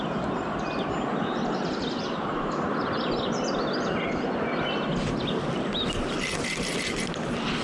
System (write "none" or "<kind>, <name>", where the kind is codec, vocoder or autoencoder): none